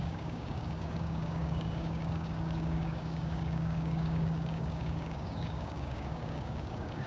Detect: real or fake fake